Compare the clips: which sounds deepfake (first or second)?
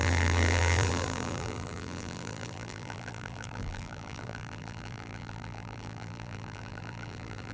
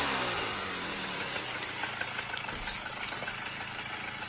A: first